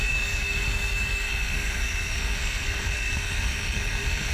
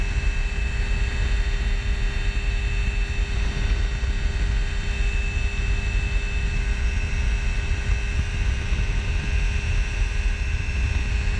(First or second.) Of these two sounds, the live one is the second